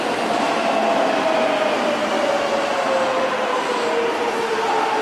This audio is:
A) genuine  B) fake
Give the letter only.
A